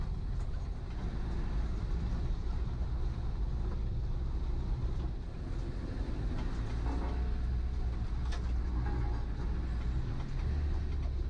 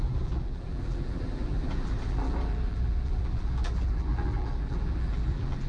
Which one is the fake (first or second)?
second